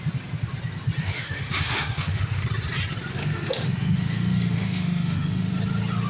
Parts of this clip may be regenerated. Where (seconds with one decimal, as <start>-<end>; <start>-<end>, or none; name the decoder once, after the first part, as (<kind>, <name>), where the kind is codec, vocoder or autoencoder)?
1.0-2.4 (autoencoder, DAC-VAE); 3.2-5.5